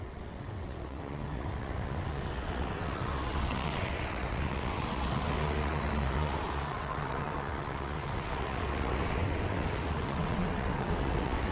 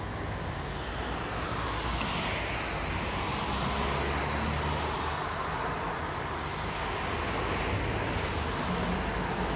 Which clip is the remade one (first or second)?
first